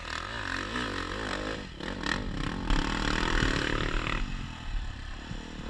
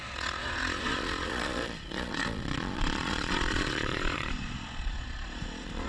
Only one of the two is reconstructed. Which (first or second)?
second